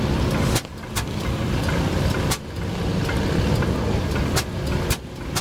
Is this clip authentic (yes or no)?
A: yes